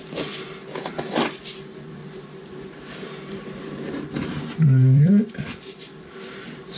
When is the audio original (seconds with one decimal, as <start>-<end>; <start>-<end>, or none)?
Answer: 0.0-2.0; 5.1-6.8